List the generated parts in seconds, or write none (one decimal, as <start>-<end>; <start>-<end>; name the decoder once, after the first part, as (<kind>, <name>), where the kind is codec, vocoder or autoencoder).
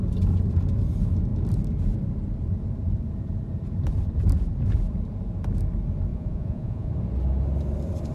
6.1-6.9 (vocoder, Vocos)